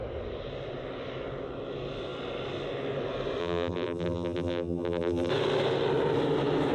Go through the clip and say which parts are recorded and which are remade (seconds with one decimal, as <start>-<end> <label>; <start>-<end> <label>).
0.0-3.4 recorded; 3.4-5.3 remade; 5.3-6.7 recorded